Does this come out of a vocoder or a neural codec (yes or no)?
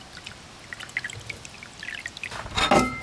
no